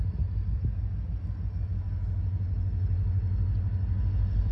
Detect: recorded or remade recorded